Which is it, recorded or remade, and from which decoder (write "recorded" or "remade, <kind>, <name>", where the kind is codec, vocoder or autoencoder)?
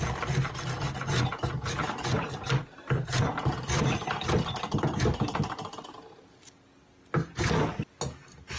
recorded